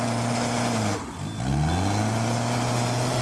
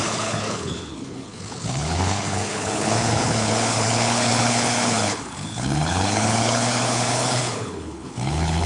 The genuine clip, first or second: first